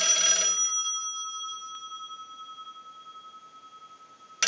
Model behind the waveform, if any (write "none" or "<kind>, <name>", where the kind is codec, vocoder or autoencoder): none